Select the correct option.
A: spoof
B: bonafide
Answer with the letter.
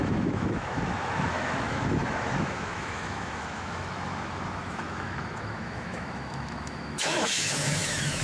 A